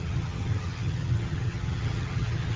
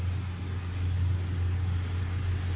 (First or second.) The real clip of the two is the second